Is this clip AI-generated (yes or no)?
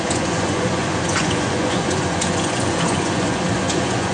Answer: yes